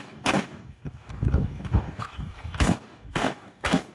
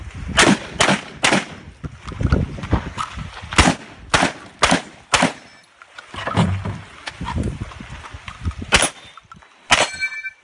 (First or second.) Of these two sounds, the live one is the second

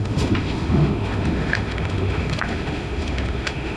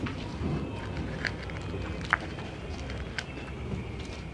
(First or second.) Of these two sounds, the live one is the second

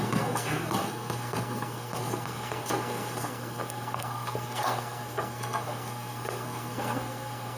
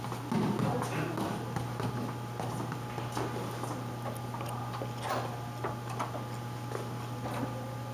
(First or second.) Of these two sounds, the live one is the second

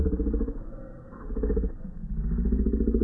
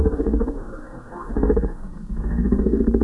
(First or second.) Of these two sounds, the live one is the first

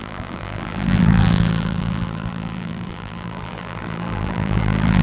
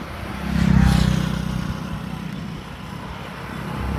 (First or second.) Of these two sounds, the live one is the second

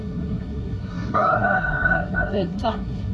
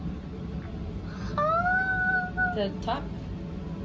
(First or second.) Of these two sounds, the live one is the second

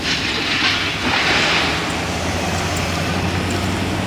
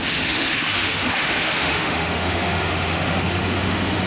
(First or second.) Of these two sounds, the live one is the first